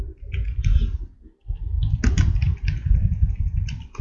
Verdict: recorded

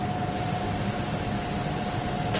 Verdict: recorded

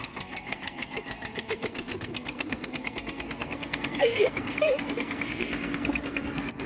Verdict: remade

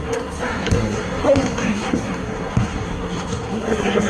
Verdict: remade